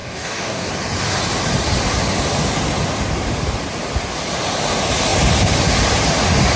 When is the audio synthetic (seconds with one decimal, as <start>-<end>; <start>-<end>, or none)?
0.0-0.7